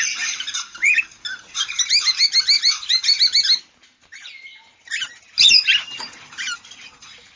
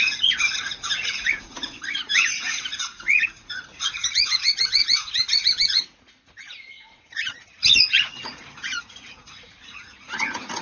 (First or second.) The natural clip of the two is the first